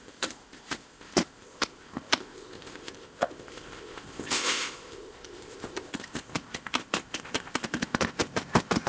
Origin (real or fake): fake